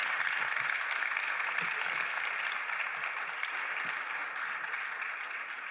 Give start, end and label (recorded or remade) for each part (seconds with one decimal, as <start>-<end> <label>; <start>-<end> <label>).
0.0-5.7 recorded